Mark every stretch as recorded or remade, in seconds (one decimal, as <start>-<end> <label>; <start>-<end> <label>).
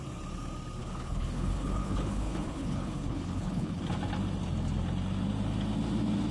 0.0-0.8 recorded; 0.8-3.8 remade; 3.8-6.3 recorded